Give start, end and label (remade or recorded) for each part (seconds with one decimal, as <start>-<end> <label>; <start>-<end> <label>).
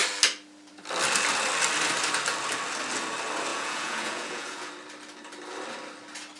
0.0-3.5 recorded; 3.5-4.7 remade; 4.7-6.4 recorded